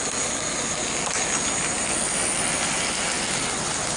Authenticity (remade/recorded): recorded